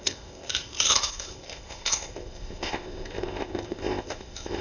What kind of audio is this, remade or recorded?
remade